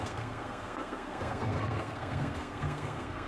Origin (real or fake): fake